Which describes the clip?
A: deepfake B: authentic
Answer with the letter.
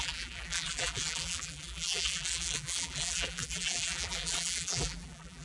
A